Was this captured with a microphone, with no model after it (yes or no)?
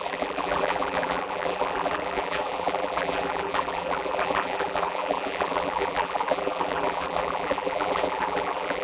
no